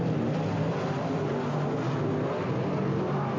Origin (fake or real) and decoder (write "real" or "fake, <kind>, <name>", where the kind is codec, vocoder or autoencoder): real